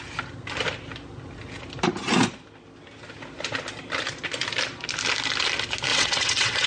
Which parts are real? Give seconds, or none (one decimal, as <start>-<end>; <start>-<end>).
0.0-5.9